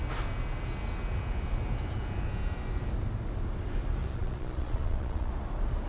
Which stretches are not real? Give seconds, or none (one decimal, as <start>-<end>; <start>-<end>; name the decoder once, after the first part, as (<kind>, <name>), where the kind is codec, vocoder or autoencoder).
4.0-5.3 (vocoder, Vocos)